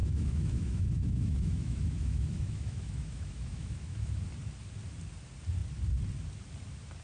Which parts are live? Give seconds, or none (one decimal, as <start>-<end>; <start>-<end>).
4.2-7.0